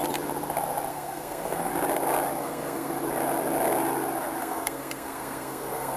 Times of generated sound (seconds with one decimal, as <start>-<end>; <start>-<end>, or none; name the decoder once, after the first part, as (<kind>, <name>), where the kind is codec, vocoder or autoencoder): 0.9-1.7 (codec, SNAC); 2.4-2.9; 4.4-6.0